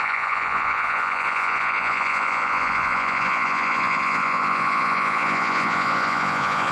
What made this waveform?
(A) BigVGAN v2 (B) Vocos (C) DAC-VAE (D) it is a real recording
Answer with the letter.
B